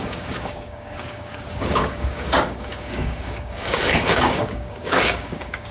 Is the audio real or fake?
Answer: fake